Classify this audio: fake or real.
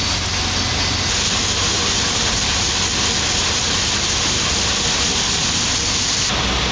real